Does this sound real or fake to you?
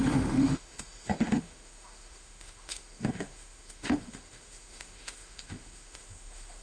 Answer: fake